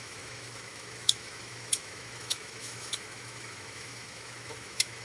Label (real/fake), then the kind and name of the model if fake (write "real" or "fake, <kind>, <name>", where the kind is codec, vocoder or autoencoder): fake, autoencoder, DAC-VAE